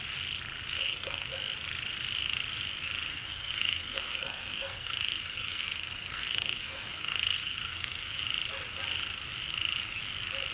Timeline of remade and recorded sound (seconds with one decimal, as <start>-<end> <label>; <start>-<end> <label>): 0.0-0.8 recorded; 0.8-1.3 remade; 1.3-3.1 recorded; 3.1-8.2 remade; 8.2-10.5 recorded